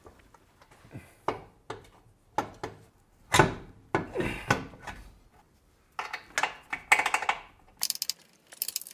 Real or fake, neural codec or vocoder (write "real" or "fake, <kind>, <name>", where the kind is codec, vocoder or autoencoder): real